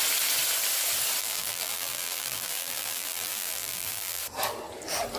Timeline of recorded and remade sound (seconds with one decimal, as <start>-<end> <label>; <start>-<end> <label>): 0.0-1.2 recorded; 1.2-4.2 remade; 4.2-5.2 recorded